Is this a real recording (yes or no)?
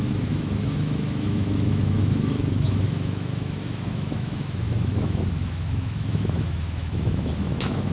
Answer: no